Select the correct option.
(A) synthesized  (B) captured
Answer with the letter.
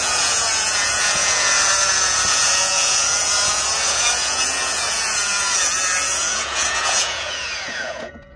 A